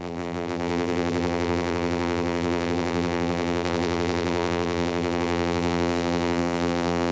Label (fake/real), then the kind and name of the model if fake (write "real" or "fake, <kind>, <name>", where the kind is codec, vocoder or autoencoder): fake, vocoder, BigVGAN v2